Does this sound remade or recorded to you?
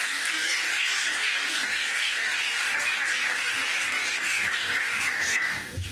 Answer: remade